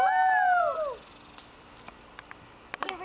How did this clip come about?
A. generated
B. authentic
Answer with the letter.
B